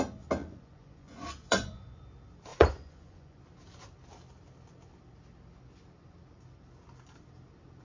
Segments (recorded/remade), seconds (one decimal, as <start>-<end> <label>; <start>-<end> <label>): 0.0-0.4 recorded; 0.4-2.0 remade; 2.0-2.5 recorded; 2.5-3.4 remade; 3.4-7.8 recorded

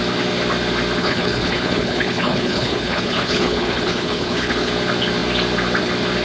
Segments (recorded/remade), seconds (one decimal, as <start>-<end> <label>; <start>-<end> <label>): 0.0-1.0 recorded; 1.0-4.7 remade; 4.7-6.2 recorded

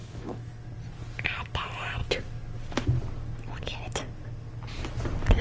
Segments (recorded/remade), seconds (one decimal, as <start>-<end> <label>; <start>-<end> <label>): 0.0-0.6 remade; 0.6-5.4 recorded

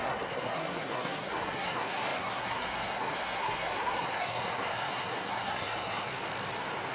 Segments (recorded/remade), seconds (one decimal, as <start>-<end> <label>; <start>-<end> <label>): 0.0-6.1 remade; 6.1-6.9 recorded

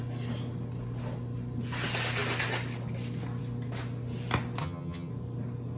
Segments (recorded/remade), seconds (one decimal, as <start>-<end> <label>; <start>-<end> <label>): 0.0-4.6 recorded; 4.6-5.1 remade; 5.1-5.8 recorded

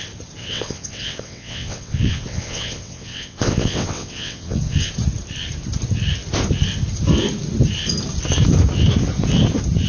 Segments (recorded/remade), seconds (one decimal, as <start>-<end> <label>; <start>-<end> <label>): 0.0-0.4 recorded; 0.4-4.9 remade; 4.9-9.9 recorded